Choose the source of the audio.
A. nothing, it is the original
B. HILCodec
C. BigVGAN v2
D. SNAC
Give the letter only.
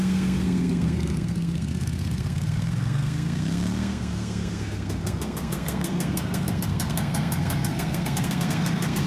D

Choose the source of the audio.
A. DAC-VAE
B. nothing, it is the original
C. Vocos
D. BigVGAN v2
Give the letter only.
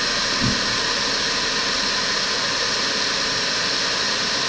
B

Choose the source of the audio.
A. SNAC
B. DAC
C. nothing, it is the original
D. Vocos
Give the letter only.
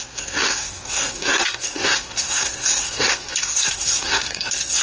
A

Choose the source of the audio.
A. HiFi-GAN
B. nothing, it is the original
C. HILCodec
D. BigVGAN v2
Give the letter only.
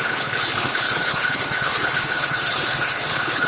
C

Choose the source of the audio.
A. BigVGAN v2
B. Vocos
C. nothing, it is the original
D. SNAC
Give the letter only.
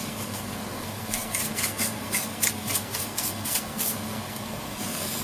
D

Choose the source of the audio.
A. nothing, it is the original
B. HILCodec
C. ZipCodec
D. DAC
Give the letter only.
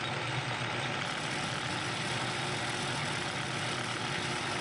A